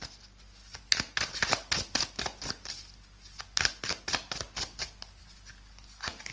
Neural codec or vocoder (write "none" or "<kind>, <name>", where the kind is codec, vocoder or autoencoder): none